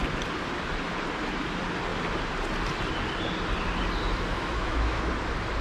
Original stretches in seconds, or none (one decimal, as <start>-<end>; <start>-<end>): 0.0-4.3; 5.1-5.6